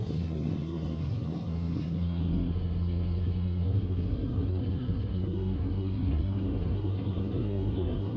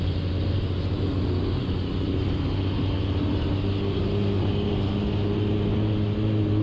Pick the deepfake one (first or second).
first